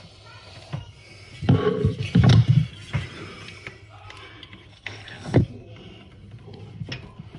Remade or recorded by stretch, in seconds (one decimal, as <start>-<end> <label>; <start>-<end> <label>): 0.0-4.7 recorded; 4.7-5.4 remade; 5.4-7.4 recorded